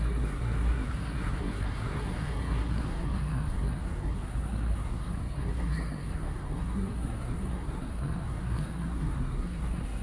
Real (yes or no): no